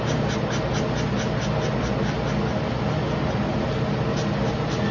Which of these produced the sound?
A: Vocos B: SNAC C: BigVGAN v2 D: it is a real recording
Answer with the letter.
D